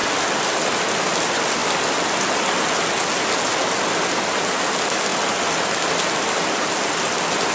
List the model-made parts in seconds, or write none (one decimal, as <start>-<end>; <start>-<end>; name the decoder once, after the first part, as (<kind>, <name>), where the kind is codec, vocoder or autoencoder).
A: none